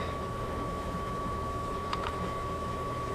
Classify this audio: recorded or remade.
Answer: remade